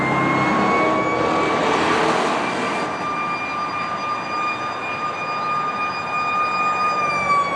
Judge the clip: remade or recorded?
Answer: recorded